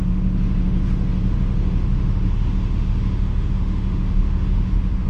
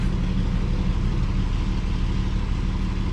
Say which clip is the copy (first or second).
first